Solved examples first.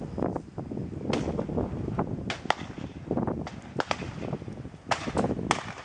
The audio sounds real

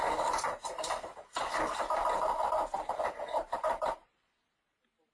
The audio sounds real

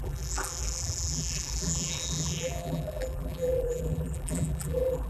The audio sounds fake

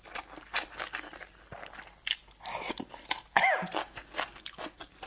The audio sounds real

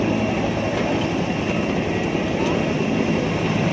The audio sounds real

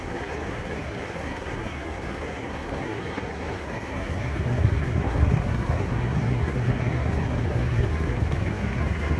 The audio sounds fake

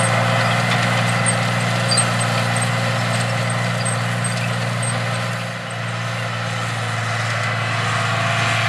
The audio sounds real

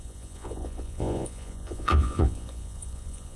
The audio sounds fake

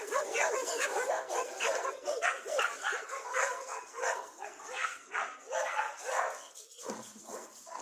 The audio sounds fake